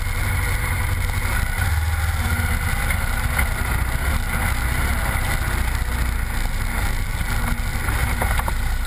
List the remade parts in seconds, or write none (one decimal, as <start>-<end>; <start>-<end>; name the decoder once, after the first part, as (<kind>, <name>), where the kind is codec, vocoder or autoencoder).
8.0-8.9 (vocoder, BigVGAN v2)